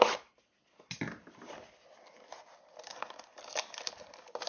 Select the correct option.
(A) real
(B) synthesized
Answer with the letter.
A